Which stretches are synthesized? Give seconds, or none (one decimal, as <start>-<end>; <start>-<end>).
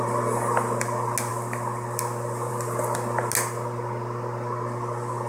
none